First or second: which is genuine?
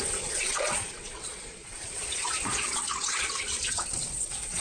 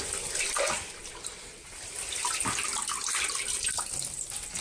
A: second